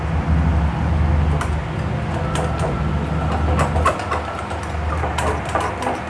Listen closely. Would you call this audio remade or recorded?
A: recorded